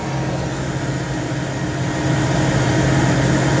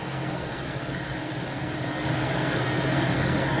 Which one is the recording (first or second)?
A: first